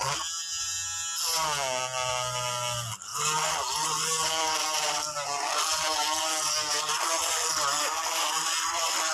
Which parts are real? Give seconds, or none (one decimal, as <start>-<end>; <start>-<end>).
0.0-9.1